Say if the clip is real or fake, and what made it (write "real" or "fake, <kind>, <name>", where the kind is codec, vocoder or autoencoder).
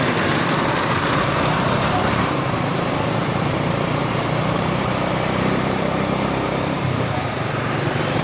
fake, vocoder, BigVGAN v2